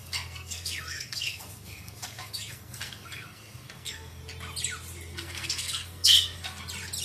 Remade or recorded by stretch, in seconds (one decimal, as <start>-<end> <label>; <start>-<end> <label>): 0.0-4.2 remade; 4.2-5.1 recorded; 5.1-6.6 remade; 6.6-7.0 recorded

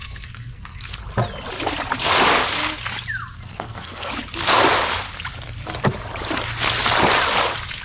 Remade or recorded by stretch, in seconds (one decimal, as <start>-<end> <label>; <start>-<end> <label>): 0.0-1.0 remade; 1.0-3.5 recorded; 3.5-4.1 remade; 4.1-7.8 recorded

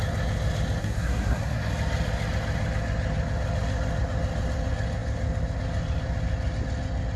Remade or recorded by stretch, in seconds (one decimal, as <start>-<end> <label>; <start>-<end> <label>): 0.0-0.8 recorded; 0.8-1.7 remade; 1.7-7.2 recorded

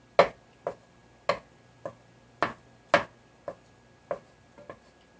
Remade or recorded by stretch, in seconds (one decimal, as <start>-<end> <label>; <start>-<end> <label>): 0.0-5.2 recorded

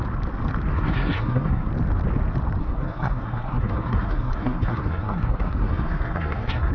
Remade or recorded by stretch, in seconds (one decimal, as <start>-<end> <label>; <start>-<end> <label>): 0.0-0.7 recorded; 0.7-1.7 remade; 1.7-2.6 recorded; 2.6-6.7 remade